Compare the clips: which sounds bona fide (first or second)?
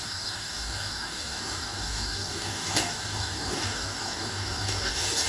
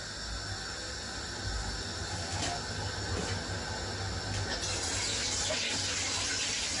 second